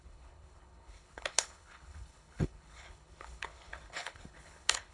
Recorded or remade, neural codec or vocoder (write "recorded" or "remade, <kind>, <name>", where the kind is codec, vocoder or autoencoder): remade, codec, HILCodec